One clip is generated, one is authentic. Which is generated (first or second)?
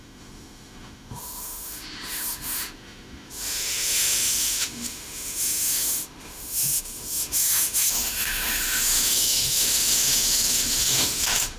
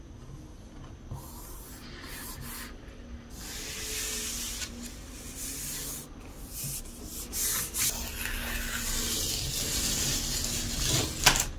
first